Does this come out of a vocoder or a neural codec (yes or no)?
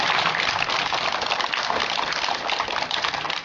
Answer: no